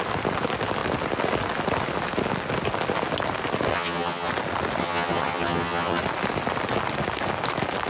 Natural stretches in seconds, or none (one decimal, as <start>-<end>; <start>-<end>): 0.0-3.7; 4.3-4.8; 6.0-7.9